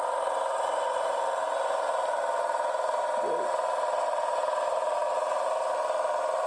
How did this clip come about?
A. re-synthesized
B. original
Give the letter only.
B